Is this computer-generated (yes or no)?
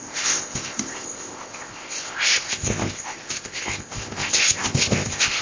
yes